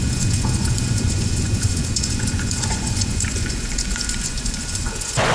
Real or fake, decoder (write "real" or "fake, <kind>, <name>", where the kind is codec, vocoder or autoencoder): fake, vocoder, Vocos